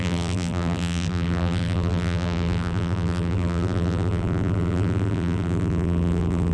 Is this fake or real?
fake